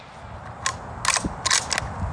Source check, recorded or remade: recorded